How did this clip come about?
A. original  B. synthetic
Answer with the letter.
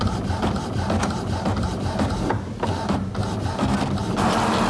A